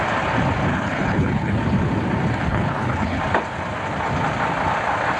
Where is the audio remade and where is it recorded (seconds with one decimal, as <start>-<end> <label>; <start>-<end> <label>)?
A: 0.0-0.7 recorded; 0.7-1.6 remade; 1.6-2.5 recorded; 2.5-3.2 remade; 3.2-5.2 recorded